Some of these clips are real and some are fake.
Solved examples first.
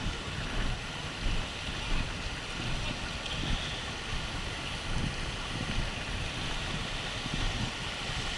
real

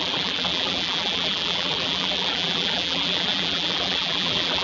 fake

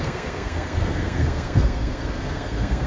fake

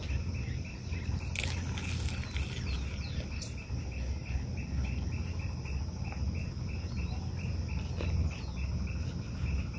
real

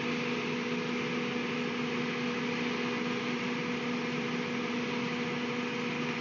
real